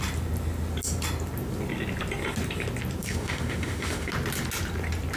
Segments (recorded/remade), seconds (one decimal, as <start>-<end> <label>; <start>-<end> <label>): 0.0-3.0 recorded; 3.0-4.1 remade; 4.1-5.2 recorded